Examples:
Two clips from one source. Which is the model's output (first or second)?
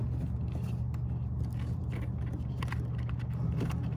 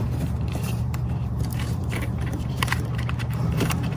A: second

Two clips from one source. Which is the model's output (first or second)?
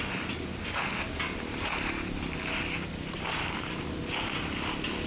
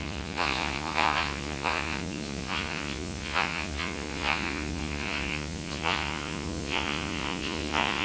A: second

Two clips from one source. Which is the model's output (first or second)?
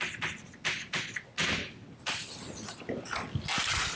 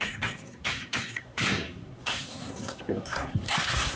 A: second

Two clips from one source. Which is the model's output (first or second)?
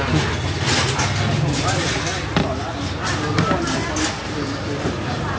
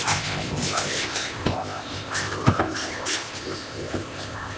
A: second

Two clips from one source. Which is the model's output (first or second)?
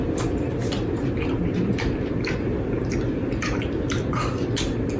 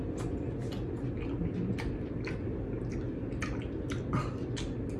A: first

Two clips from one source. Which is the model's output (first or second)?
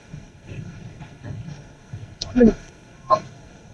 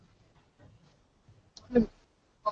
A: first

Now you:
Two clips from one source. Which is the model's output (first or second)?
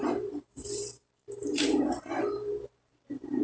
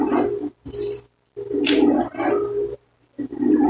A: first